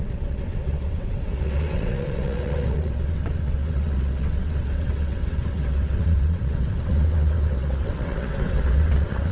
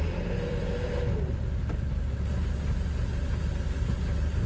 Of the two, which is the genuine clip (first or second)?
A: second